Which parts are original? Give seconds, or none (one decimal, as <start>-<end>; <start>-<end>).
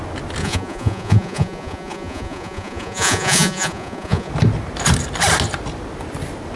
0.0-0.4; 4.3-6.6